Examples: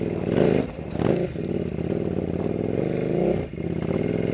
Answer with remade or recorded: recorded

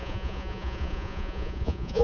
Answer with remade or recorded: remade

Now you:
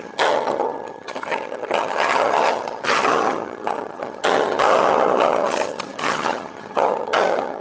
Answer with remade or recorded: remade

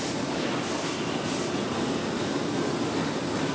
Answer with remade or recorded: recorded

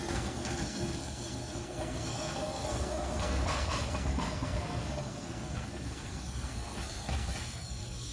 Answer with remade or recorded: remade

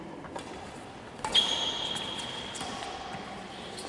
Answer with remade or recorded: recorded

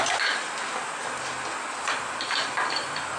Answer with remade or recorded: recorded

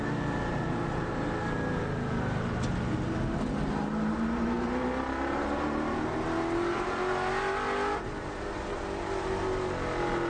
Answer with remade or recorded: recorded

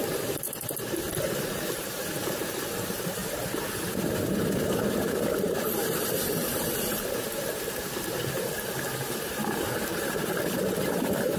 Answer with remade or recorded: remade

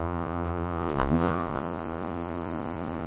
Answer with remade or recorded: remade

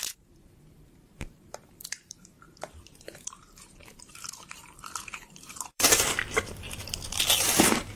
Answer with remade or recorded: remade